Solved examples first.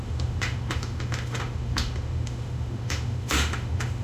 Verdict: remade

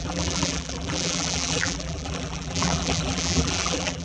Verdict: remade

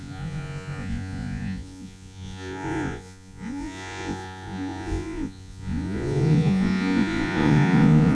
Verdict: remade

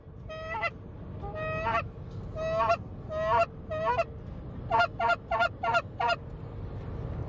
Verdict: recorded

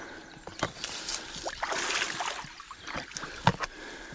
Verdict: recorded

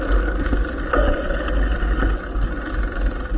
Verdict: recorded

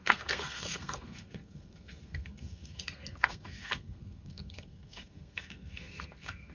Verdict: remade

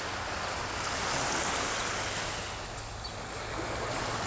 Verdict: recorded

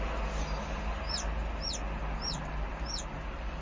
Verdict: recorded